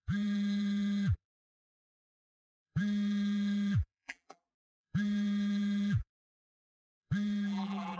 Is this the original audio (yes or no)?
no